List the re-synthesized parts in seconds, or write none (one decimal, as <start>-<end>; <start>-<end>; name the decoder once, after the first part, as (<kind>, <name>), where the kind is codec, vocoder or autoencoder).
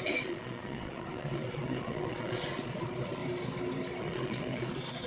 0.0-3.2 (vocoder, Vocos); 4.0-5.1